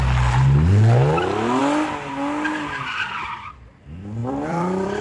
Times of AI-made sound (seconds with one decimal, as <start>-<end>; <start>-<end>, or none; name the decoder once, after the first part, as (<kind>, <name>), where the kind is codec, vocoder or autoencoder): 4.2-5.0 (vocoder, BigVGAN v2)